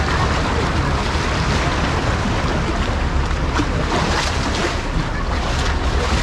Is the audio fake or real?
real